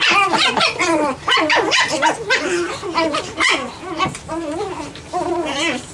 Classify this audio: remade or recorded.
remade